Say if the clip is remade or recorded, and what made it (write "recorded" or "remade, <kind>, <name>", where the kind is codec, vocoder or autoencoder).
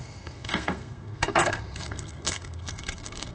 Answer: remade, codec, SNAC